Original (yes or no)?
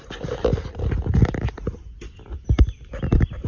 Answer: yes